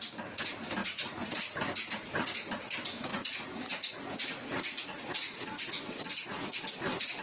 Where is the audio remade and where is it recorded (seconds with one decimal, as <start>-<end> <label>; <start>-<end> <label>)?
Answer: 0.0-0.8 recorded; 0.8-1.4 remade; 1.4-3.1 recorded; 3.1-6.7 remade; 6.7-7.2 recorded